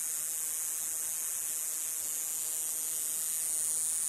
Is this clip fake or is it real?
real